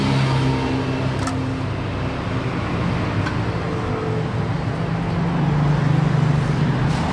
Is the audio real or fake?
real